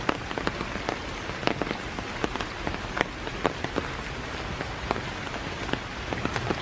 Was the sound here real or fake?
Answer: real